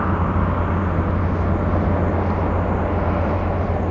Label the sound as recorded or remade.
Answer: recorded